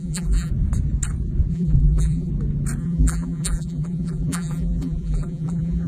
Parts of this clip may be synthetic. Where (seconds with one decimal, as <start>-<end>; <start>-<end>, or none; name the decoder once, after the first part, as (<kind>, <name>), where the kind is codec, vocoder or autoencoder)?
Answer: 0.0-0.5 (vocoder, BigVGAN v2); 1.5-2.3; 2.8-5.9